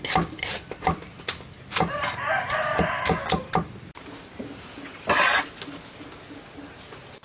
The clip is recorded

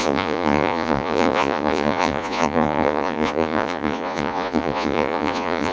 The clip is remade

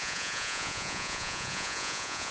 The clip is remade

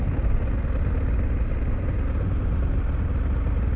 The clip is recorded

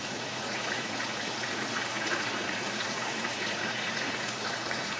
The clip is remade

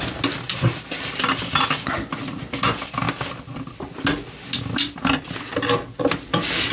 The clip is recorded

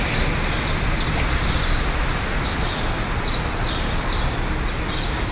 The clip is recorded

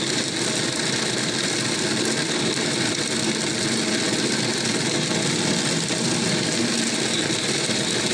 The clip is recorded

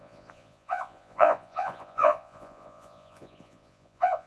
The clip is remade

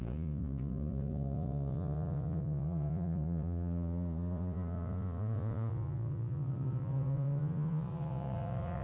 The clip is remade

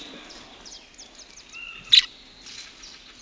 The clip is recorded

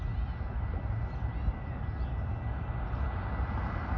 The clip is recorded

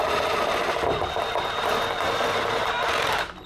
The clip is recorded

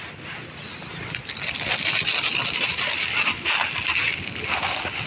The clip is recorded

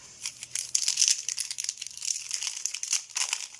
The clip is recorded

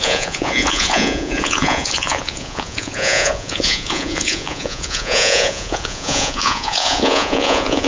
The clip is remade